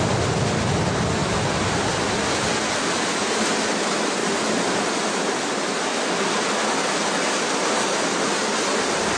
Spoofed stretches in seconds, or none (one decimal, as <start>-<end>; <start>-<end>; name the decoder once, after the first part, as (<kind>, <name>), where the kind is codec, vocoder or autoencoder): 1.2-3.2 (vocoder, BigVGAN v2); 4.2-8.3